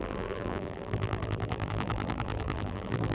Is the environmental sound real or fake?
fake